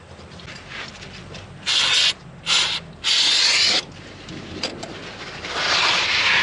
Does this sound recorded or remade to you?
recorded